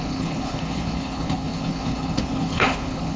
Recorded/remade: remade